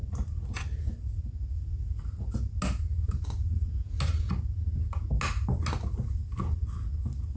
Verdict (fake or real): real